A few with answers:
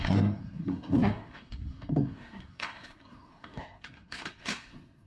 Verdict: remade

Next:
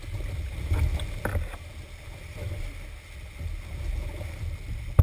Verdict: recorded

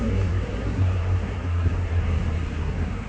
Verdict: remade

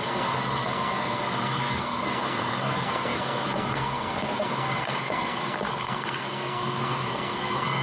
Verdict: remade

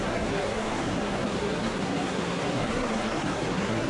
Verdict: remade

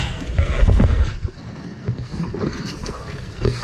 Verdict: remade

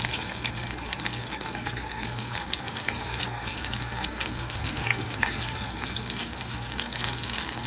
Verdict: remade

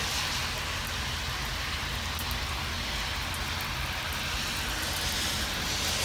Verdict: recorded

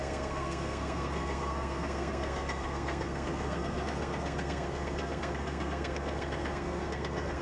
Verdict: remade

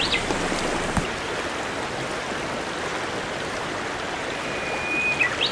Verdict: recorded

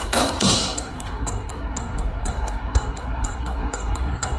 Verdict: remade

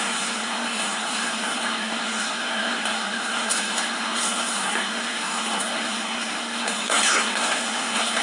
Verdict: remade